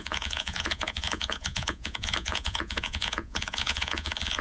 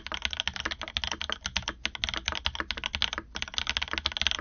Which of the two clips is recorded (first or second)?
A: second